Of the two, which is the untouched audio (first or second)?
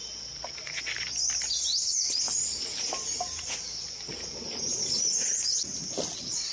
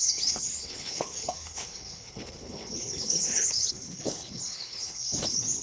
first